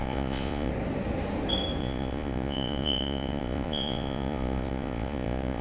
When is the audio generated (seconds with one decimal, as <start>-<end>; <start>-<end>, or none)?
0.0-0.7; 1.8-5.6